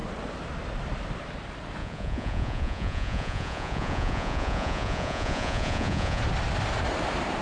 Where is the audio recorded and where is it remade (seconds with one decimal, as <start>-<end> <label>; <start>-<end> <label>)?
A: 0.0-1.8 recorded; 1.8-6.2 remade; 6.2-7.4 recorded